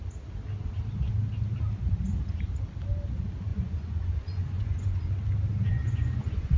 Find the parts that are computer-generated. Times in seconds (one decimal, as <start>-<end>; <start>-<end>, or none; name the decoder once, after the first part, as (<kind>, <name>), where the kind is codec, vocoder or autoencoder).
3.5-5.1 (vocoder, Vocos); 5.7-6.6